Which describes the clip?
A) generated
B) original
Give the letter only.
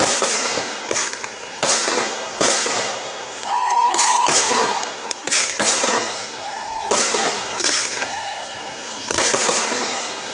A